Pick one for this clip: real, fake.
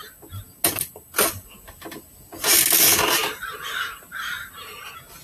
real